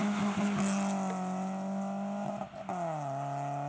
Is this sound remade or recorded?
recorded